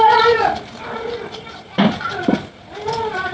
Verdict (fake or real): real